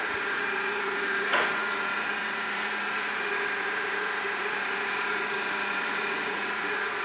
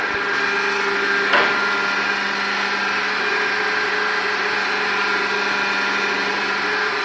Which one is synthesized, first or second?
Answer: first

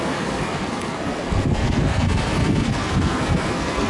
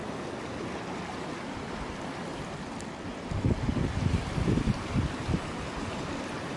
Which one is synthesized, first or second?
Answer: first